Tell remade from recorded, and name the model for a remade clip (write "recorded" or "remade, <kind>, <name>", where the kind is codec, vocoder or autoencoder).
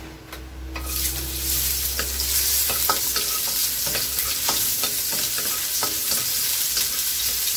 recorded